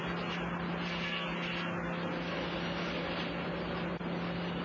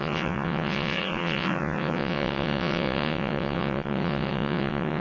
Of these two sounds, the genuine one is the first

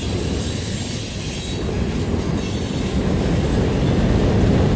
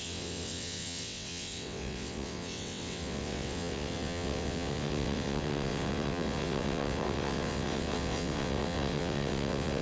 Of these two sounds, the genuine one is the first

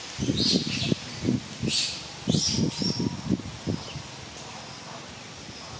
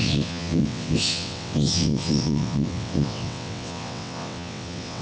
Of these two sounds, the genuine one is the first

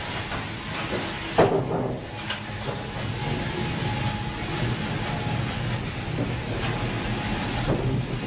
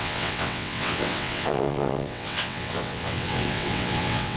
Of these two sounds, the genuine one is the first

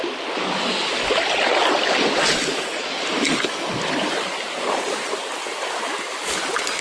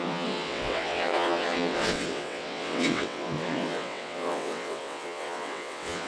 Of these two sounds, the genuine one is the first